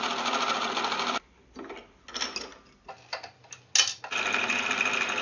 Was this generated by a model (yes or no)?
no